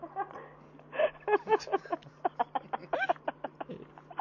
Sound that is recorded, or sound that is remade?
recorded